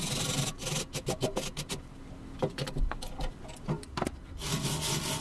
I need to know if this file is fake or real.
real